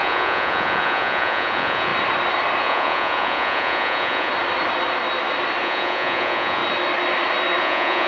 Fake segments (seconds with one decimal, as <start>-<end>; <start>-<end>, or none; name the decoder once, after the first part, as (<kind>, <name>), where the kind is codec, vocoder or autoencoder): 0.0-1.9 (vocoder, Vocos); 2.6-4.3; 5.6-6.6; 7.6-8.1